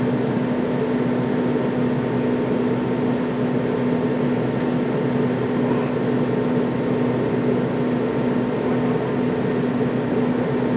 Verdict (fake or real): real